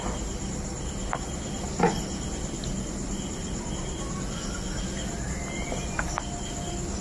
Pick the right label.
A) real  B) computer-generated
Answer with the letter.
A